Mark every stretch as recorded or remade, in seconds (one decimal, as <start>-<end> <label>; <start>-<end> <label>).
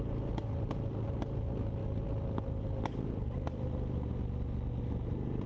0.0-5.5 recorded